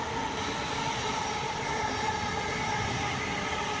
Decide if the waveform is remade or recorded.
recorded